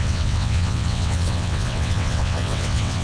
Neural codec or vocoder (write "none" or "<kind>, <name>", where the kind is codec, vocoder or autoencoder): vocoder, WaveNeXt